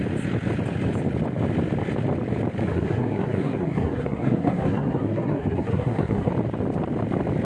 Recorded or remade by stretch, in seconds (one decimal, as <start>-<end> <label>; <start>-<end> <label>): 0.0-2.6 recorded; 2.6-6.3 remade; 6.3-7.4 recorded